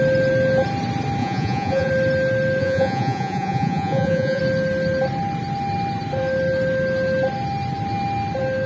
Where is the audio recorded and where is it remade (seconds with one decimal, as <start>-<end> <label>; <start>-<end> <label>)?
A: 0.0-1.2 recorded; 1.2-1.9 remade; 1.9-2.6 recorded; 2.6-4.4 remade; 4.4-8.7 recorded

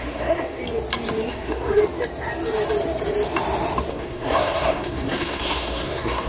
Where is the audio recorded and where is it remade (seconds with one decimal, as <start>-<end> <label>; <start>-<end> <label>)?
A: 0.0-0.6 remade; 0.6-1.3 recorded; 1.3-1.8 remade; 1.8-3.9 recorded; 3.9-6.3 remade

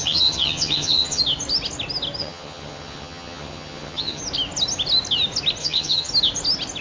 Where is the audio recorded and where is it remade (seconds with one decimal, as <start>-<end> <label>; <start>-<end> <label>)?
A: 0.0-1.2 remade; 1.2-2.2 recorded; 2.2-4.2 remade; 4.2-5.6 recorded; 5.6-6.1 remade; 6.1-6.8 recorded